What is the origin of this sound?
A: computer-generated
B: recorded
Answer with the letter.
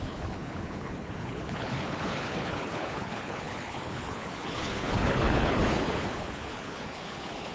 A